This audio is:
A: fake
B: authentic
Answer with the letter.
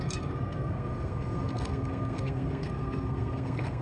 A